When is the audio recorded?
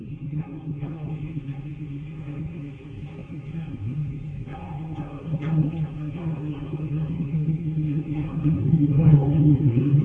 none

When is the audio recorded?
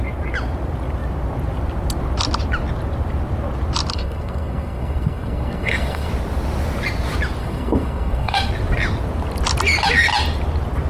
0.0-3.9; 6.1-7.4; 8.5-10.9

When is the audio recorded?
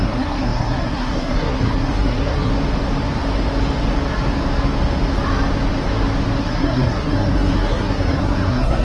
2.5-6.4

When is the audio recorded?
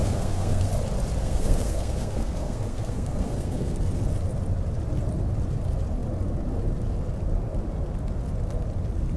0.7-1.2; 3.9-9.2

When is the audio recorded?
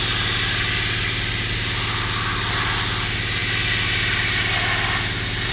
0.0-5.5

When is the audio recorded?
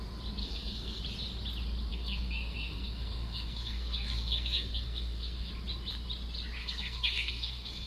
0.0-0.4; 1.0-1.9; 5.5-6.6